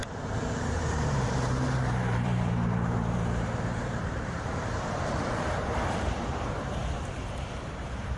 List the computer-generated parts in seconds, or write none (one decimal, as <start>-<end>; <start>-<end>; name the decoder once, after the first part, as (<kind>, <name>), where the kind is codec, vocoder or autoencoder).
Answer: 0.0-8.2 (vocoder, BigVGAN v2)

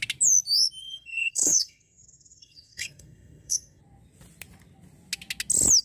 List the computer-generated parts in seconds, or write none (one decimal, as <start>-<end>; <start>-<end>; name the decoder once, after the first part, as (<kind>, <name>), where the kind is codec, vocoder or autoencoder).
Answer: 0.8-3.8 (codec, SNAC)

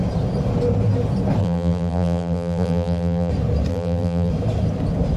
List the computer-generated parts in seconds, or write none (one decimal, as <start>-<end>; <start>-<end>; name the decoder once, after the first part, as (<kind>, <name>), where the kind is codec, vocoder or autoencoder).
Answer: 1.4-3.3 (vocoder, BigVGAN v2); 3.7-4.3

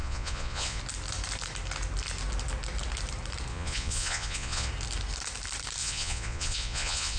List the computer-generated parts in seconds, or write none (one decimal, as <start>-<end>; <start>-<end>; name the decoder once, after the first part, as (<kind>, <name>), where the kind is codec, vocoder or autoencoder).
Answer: 0.0-0.8 (vocoder, Vocos); 3.5-4.7; 5.8-7.2